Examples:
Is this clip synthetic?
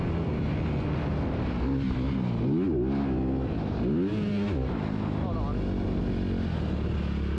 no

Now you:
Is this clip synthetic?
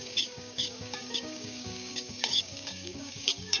yes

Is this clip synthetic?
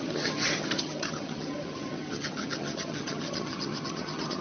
yes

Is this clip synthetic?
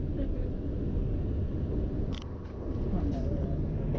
no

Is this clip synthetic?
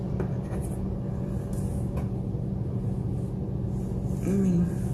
no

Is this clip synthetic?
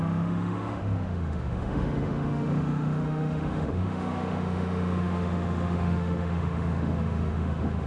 yes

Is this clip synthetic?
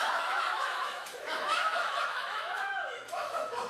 yes